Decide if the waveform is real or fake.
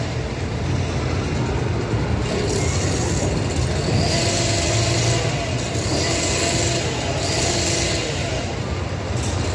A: real